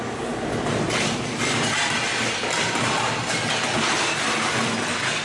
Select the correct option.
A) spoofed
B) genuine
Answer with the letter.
B